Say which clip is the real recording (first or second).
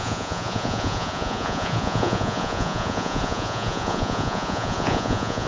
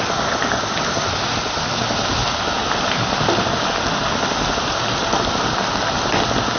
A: second